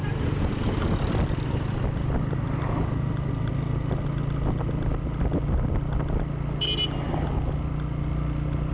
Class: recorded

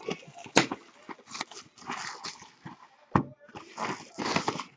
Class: recorded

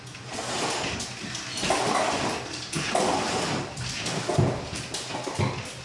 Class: recorded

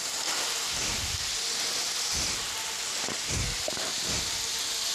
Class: recorded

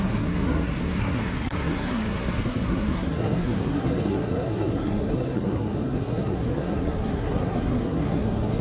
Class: remade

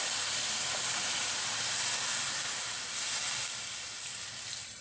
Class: recorded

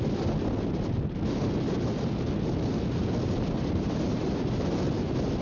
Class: recorded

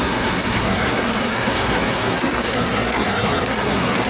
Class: remade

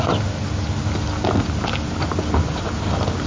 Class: recorded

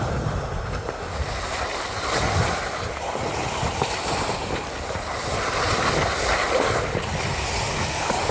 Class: recorded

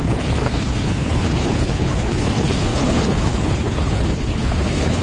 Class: remade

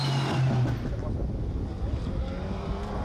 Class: recorded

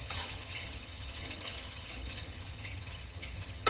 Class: remade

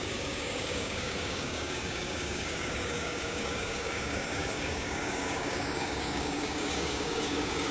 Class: remade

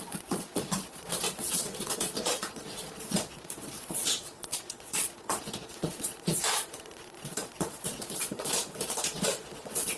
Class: remade